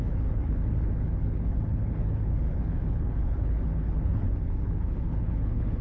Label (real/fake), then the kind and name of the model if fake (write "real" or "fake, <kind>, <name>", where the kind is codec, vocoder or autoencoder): fake, codec, HILCodec